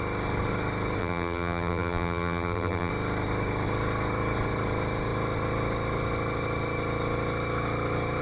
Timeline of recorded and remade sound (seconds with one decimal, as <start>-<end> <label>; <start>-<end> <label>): 0.0-1.0 recorded; 1.0-2.9 remade; 2.9-8.2 recorded